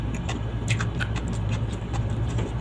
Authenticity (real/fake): real